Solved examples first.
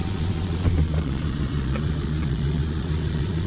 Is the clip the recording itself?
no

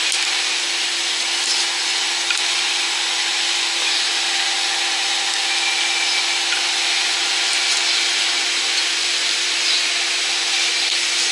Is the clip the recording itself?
yes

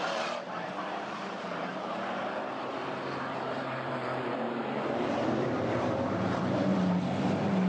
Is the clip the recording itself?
no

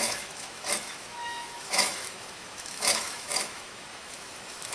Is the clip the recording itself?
no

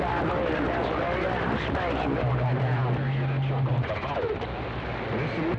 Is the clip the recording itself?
yes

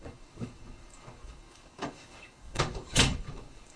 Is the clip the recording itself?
no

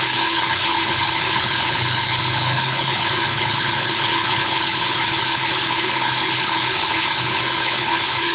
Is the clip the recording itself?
no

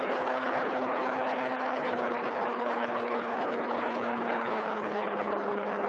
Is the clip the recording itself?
no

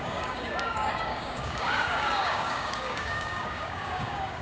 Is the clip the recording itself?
no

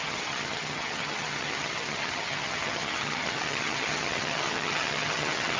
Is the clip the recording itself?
no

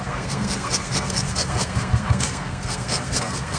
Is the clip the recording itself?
no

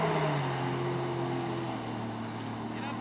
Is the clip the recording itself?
yes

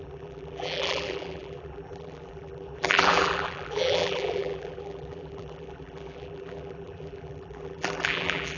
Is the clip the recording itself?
no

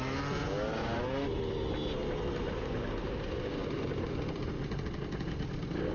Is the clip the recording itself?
yes